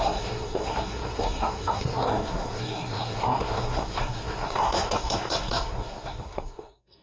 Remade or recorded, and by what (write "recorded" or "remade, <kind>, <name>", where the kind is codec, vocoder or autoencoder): remade, codec, SNAC